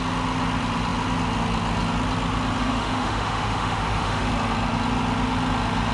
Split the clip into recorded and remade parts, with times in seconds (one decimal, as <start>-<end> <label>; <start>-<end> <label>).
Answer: 0.0-2.6 recorded; 2.6-4.3 remade; 4.3-5.9 recorded